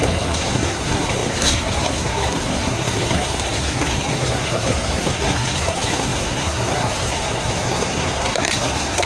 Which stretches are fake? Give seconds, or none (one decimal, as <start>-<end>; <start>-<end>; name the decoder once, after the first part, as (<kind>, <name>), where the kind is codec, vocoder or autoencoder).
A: 0.0-9.1 (codec, SNAC)